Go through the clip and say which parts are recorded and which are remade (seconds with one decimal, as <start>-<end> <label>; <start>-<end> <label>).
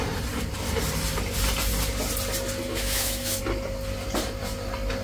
0.0-2.7 recorded; 2.7-3.4 remade; 3.4-5.0 recorded